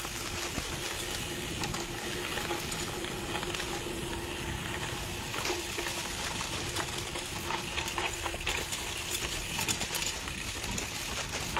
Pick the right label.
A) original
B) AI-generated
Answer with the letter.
A